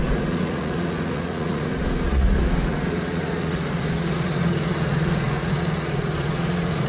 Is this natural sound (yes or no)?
no